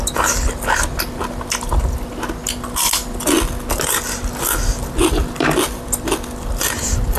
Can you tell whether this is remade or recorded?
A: recorded